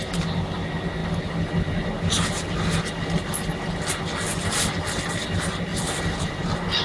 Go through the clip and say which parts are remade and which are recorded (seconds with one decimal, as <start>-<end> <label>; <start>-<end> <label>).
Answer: 0.0-5.7 recorded; 5.7-6.3 remade; 6.3-6.8 recorded

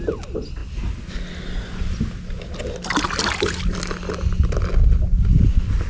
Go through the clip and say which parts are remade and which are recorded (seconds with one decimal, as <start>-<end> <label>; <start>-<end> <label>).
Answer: 0.0-5.9 recorded

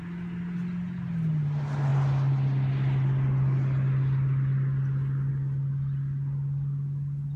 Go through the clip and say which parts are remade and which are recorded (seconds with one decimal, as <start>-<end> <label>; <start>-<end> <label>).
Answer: 0.0-7.4 recorded

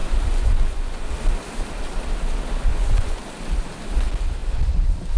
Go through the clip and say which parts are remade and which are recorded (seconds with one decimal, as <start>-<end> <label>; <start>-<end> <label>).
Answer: 0.0-1.1 remade; 1.1-2.7 recorded; 2.7-3.2 remade; 3.2-5.2 recorded